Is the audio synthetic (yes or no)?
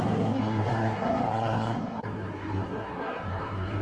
yes